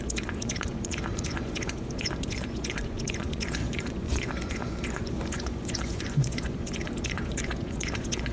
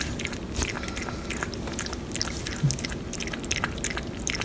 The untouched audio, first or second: second